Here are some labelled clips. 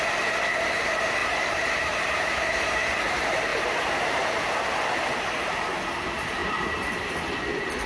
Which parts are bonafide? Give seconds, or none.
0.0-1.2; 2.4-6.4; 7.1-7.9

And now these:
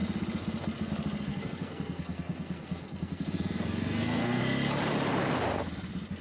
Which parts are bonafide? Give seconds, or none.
0.0-1.3; 4.4-6.2